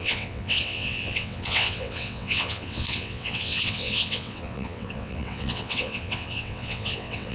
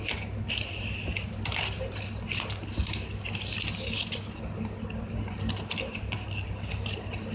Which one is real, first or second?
second